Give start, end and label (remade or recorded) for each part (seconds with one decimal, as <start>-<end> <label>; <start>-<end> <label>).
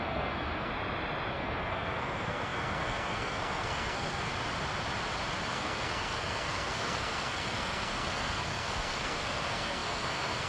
0.0-0.7 remade; 0.7-1.3 recorded; 1.3-4.3 remade; 4.3-5.5 recorded; 5.5-10.5 remade